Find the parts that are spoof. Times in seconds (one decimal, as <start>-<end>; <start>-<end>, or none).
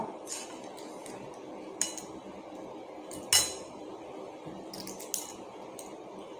none